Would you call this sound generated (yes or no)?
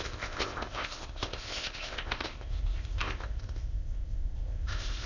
yes